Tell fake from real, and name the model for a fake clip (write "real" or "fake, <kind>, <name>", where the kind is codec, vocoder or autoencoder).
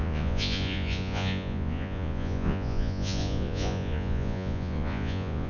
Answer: fake, vocoder, Vocos